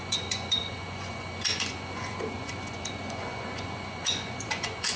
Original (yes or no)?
no